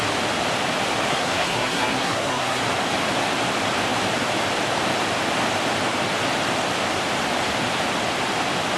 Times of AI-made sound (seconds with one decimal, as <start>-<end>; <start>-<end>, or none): 1.1-2.6

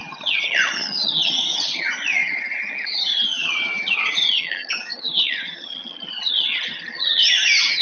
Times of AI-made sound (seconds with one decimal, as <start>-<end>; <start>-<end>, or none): 0.0-7.8

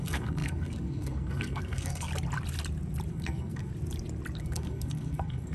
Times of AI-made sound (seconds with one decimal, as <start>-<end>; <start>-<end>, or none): 0.0-2.1; 3.1-3.7; 4.4-5.5

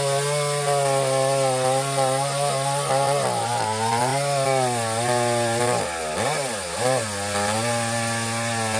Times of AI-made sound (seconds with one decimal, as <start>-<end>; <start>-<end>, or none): none

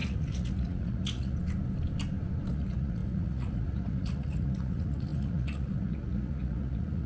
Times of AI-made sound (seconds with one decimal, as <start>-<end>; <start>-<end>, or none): 0.0-1.4; 2.5-7.1

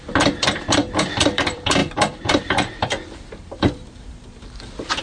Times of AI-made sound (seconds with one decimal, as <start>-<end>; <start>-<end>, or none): 0.0-5.0

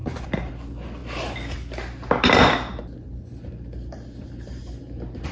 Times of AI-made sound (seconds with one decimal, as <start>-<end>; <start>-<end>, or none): none

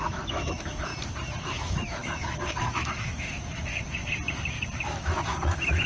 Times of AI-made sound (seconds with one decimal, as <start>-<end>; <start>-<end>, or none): 0.0-0.9; 1.4-3.7; 4.8-5.9